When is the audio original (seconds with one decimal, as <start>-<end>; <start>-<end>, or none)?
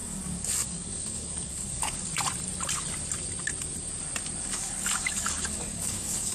2.1-4.4